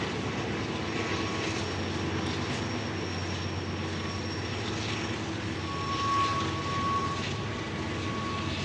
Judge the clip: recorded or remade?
recorded